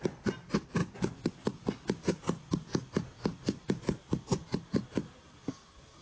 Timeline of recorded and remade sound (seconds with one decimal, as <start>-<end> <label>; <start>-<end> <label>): 0.0-0.8 recorded; 0.8-1.3 remade; 1.3-6.0 recorded